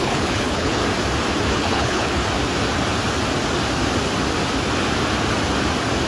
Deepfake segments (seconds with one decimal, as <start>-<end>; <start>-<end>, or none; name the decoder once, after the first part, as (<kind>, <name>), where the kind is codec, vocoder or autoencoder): 0.0-0.8 (codec, HILCodec); 1.5-2.2